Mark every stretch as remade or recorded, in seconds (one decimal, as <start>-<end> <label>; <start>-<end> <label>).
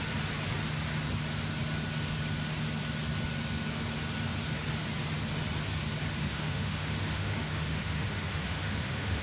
0.0-6.2 recorded; 6.2-9.2 remade